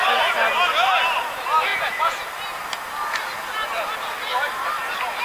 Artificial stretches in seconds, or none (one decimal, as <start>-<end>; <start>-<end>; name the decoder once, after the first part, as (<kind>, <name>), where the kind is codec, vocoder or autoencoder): 1.7-2.2 (vocoder, Vocos)